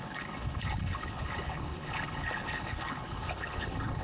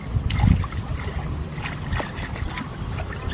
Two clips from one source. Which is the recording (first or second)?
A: second